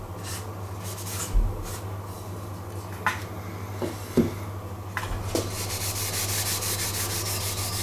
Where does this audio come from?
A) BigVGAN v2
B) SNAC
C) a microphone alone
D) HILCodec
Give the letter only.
C